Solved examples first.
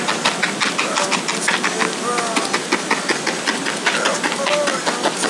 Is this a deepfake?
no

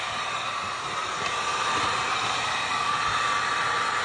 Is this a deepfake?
yes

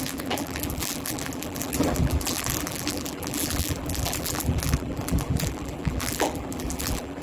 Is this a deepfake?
yes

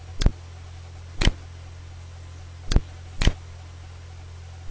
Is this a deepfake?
no